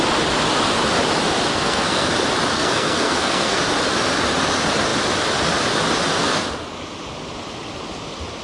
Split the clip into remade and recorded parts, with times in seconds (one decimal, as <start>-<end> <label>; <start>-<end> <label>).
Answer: 0.0-1.5 recorded; 1.5-2.1 remade; 2.1-2.5 recorded; 2.5-3.6 remade; 3.6-8.4 recorded